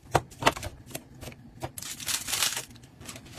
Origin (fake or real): fake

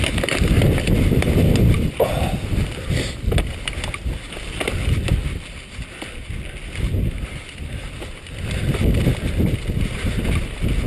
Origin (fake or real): real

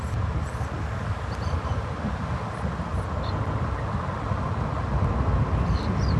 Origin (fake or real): real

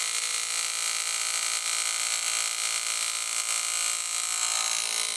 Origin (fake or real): fake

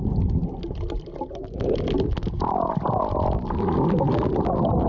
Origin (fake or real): real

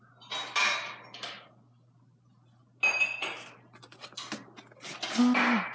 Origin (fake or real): real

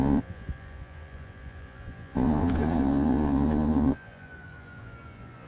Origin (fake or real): fake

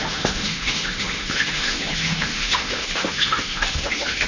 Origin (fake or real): fake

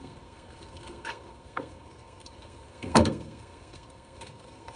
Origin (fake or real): fake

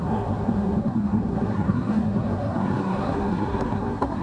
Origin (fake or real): fake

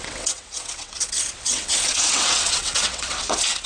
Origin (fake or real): fake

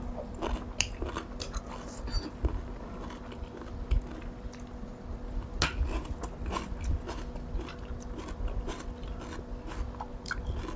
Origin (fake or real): real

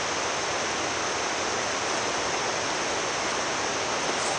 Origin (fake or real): real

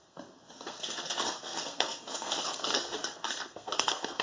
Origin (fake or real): fake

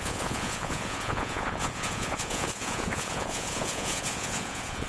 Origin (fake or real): fake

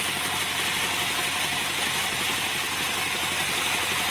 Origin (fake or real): real